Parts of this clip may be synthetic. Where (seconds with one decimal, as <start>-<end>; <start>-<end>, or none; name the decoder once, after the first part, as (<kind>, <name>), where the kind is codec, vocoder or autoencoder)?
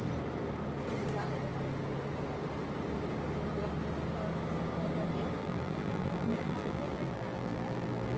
5.4-8.2 (vocoder, BigVGAN v2)